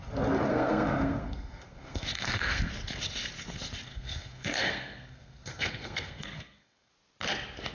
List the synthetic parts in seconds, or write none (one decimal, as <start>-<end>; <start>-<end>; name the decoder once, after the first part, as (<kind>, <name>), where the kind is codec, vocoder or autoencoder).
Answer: 0.5-2.7 (codec, SNAC); 3.9-6.9